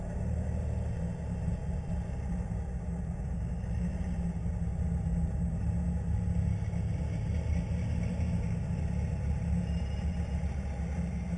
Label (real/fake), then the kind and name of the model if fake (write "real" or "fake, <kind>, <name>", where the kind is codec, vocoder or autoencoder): real